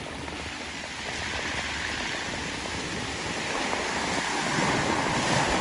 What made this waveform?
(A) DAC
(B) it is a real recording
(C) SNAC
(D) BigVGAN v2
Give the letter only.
B